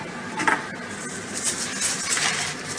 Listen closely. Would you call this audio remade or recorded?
recorded